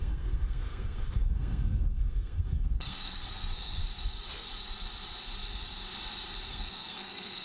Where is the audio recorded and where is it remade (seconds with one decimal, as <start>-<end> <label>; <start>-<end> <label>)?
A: 0.0-3.8 remade; 3.8-6.5 recorded; 6.5-7.4 remade